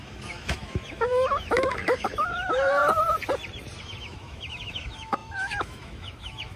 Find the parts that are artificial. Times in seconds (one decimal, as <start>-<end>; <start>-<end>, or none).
0.0-2.8; 3.8-6.6